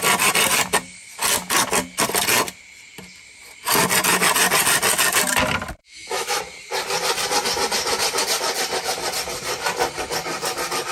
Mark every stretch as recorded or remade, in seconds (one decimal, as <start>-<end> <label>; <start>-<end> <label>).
0.0-5.8 recorded; 5.8-6.4 remade; 6.4-10.9 recorded